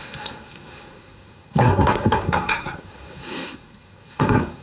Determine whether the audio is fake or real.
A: fake